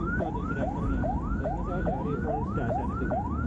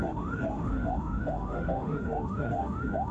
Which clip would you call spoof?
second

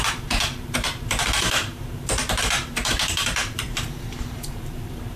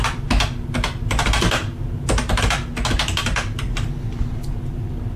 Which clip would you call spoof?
first